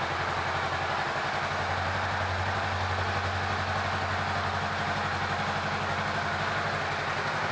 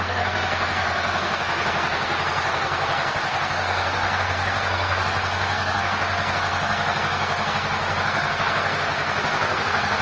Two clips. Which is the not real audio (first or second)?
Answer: second